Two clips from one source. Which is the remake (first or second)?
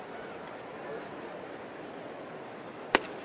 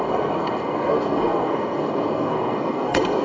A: second